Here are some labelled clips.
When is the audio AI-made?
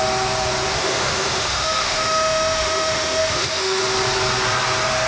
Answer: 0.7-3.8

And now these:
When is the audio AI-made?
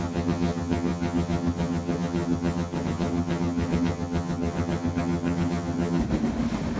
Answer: 0.0-6.0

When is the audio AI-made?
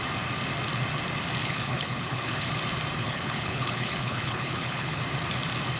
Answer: 1.4-2.5; 3.0-5.0